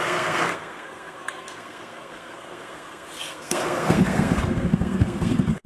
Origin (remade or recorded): remade